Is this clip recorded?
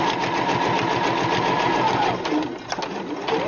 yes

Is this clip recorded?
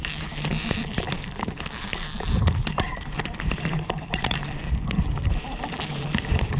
no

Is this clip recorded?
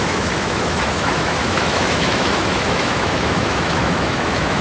no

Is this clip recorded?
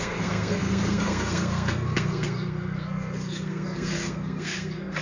no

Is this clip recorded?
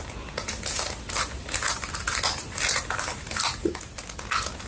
yes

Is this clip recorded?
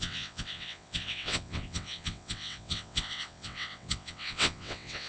no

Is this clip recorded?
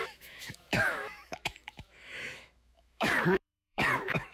no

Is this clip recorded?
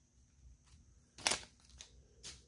yes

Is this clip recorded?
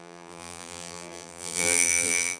no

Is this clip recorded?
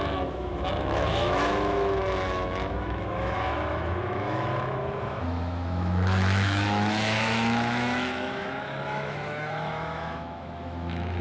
no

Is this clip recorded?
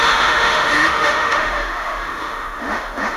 no